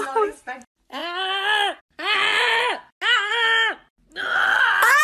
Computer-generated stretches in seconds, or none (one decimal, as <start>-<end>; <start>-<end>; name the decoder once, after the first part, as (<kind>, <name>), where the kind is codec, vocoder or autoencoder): none